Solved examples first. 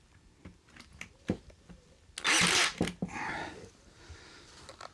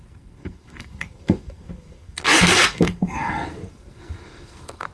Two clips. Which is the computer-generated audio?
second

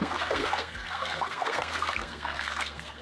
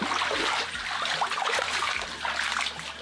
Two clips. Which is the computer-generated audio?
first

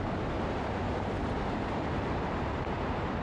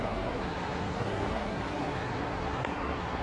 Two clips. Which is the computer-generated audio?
second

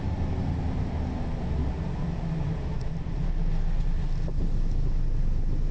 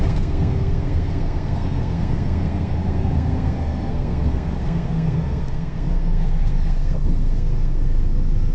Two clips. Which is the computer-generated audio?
second